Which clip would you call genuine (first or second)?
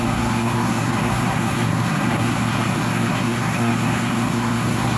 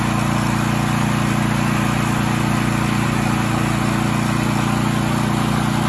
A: second